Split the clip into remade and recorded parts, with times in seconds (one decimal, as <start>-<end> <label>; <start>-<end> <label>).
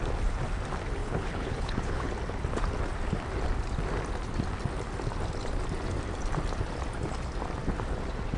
0.0-1.0 recorded; 1.0-2.1 remade; 2.1-8.4 recorded